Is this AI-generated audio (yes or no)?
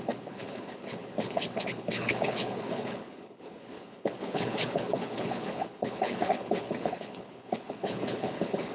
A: yes